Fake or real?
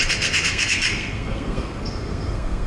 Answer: fake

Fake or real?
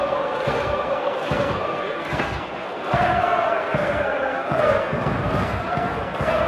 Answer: fake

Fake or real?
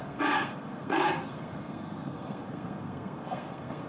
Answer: fake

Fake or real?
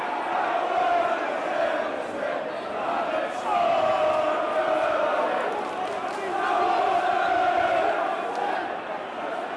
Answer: real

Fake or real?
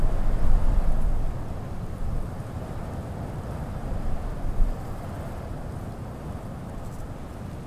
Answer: real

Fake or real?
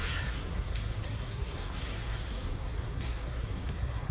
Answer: fake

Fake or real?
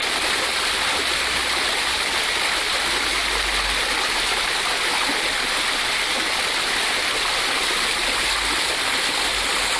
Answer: real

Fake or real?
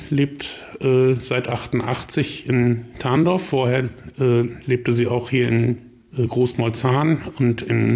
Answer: fake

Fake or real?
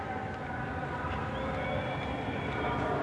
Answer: real